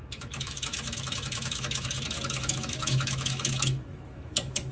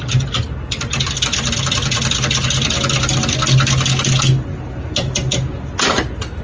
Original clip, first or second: second